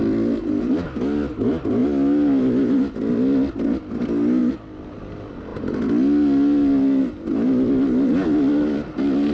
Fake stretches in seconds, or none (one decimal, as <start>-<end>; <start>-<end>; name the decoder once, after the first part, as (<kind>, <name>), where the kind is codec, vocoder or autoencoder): none